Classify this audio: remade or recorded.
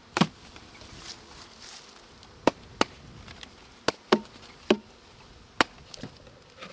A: recorded